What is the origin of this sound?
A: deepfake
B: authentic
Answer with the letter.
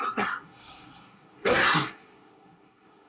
A